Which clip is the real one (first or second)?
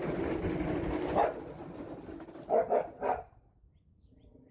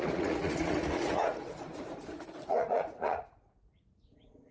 first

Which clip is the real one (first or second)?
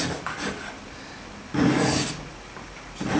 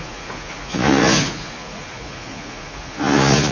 first